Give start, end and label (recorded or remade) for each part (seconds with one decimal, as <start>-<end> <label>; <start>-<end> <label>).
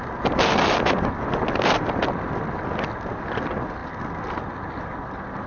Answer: 0.0-5.5 recorded